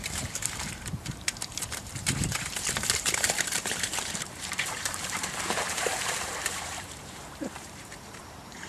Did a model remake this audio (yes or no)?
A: yes